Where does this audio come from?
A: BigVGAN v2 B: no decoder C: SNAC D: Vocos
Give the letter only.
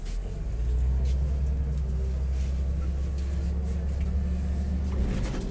B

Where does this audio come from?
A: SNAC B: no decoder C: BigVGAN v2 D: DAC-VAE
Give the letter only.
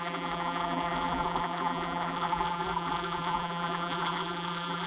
C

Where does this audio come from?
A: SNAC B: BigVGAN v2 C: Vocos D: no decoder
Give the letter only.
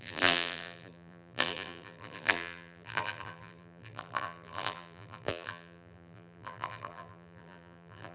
B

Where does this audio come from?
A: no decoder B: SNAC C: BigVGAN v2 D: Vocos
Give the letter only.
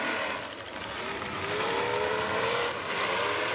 C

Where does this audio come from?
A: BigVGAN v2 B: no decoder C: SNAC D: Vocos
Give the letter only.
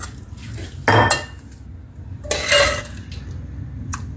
B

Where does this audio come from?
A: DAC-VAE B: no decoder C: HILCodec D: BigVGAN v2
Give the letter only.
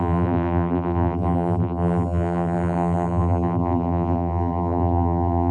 D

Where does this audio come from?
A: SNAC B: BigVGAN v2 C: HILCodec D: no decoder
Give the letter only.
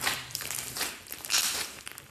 B